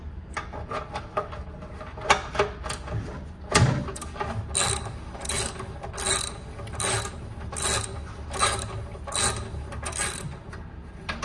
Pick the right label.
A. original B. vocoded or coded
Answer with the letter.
A